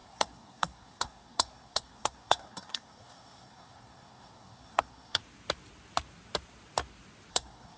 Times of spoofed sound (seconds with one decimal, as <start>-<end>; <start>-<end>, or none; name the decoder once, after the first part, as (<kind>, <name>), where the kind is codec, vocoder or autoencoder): 0.0-5.2 (codec, SNAC); 7.3-7.8